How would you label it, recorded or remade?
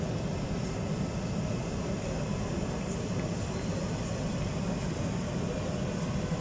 recorded